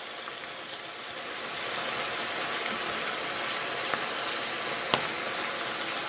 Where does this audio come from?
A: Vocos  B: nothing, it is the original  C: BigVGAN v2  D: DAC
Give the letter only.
B